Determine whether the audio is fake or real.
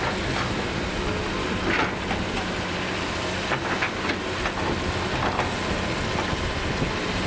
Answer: real